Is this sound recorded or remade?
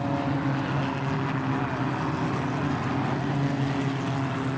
recorded